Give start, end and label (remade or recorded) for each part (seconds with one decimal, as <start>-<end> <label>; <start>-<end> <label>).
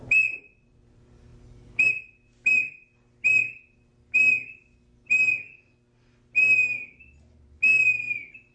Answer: 0.0-8.5 recorded